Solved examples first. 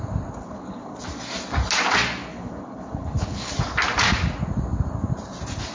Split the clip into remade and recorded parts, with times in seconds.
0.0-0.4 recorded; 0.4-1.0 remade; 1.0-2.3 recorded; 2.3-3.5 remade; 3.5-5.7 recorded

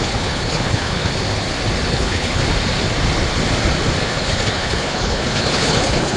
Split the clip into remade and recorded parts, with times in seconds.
0.0-1.1 remade; 1.1-1.9 recorded; 1.9-2.4 remade; 2.4-4.0 recorded; 4.0-6.2 remade

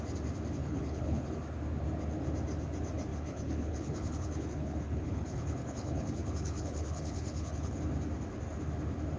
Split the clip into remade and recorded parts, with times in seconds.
0.0-0.6 recorded; 0.6-1.3 remade; 1.3-3.1 recorded; 3.1-7.8 remade; 7.8-9.2 recorded

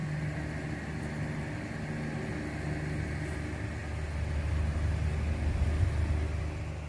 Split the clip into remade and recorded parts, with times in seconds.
0.0-6.9 recorded

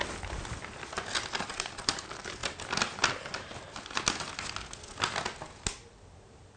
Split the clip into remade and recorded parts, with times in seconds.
0.0-6.6 recorded